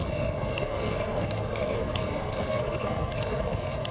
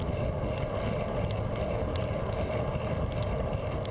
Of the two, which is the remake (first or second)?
first